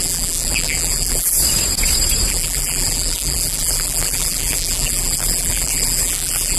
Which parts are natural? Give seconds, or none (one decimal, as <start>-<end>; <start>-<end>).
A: 1.4-2.3